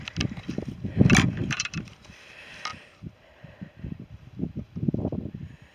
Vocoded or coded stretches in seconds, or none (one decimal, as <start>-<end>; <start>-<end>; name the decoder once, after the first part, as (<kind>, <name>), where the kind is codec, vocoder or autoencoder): 1.4-2.3 (vocoder, BigVGAN v2)

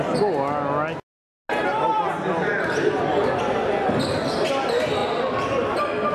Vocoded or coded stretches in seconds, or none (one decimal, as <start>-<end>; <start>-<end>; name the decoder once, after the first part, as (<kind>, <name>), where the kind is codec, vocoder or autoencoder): none

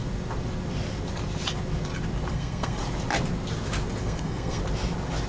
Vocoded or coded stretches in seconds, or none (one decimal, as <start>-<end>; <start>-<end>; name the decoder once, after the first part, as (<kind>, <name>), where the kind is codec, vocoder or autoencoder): 2.3-2.8 (codec, SNAC); 4.0-4.6

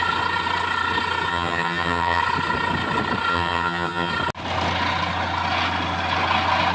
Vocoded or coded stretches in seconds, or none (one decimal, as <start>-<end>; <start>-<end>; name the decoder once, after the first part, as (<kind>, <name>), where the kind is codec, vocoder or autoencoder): 1.3-2.2 (vocoder, HiFi-GAN); 3.3-4.1

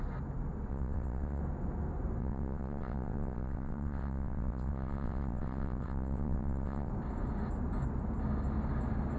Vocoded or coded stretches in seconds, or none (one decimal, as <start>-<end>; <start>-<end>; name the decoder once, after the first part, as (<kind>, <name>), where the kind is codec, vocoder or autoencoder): 0.7-1.4 (vocoder, WaveNeXt); 2.2-6.9